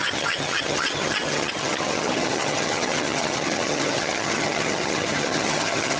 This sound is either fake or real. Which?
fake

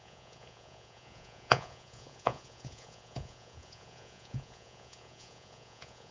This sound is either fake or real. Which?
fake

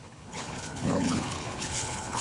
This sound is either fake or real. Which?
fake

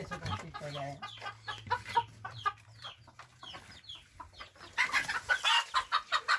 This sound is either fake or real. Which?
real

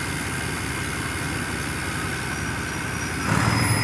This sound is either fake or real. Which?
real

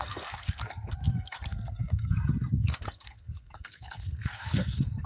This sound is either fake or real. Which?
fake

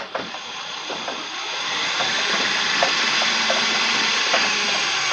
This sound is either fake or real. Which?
fake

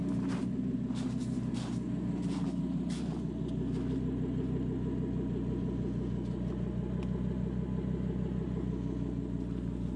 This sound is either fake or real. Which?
real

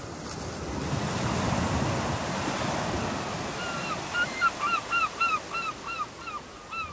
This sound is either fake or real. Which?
real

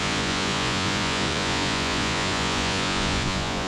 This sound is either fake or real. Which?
fake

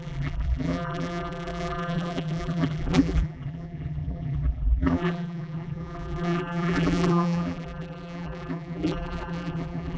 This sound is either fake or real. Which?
fake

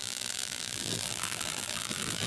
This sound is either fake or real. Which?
fake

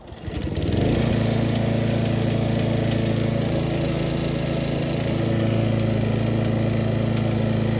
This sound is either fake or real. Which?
real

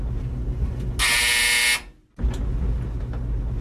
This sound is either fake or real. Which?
real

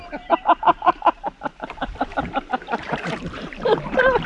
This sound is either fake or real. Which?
fake